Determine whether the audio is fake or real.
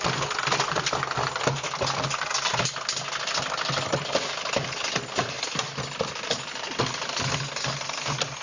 real